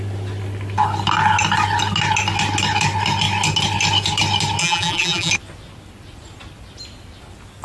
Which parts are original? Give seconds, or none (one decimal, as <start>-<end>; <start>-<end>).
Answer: 0.0-4.6; 5.3-7.6